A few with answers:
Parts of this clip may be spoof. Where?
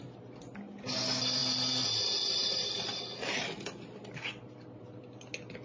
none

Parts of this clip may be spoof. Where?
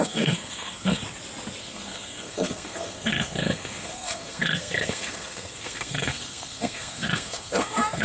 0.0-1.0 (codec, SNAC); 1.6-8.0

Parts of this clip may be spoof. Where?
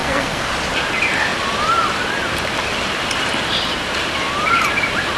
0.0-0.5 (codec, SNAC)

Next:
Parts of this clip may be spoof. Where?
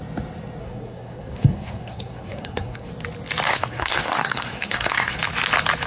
0.6-2.9 (codec, SNAC); 3.5-5.2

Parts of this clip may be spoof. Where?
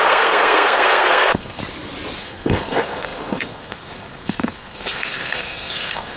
0.0-1.6 (codec, SNAC); 2.2-6.2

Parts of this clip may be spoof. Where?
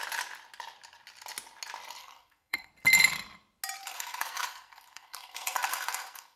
2.0-2.7 (codec, SNAC); 3.8-6.4